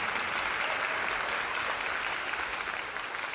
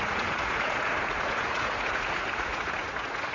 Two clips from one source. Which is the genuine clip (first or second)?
first